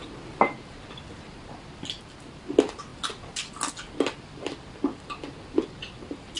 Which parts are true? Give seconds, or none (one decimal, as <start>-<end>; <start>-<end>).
0.0-6.4